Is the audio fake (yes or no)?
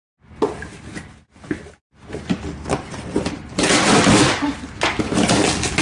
no